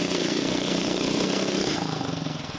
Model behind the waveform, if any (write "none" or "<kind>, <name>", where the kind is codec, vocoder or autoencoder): codec, SNAC